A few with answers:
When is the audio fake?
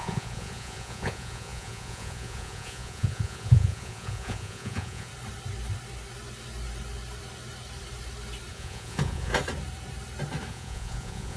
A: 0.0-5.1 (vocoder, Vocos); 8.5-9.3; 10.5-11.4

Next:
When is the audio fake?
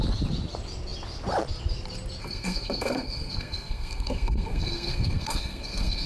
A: 2.2-6.1 (codec, SNAC)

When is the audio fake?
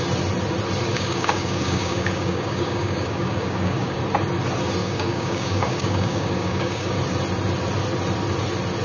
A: 0.9-4.0 (codec, DAC); 4.8-6.9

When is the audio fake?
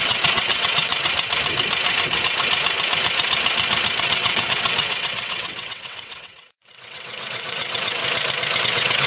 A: 0.0-0.9 (vocoder, WaveNeXt); 4.0-8.0; 8.6-9.1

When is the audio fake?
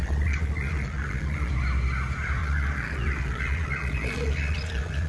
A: 0.0-1.5 (vocoder, Vocos); 2.4-5.1